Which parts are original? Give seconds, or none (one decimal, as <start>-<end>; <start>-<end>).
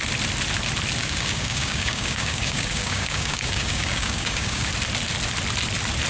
0.0-1.0; 4.7-6.1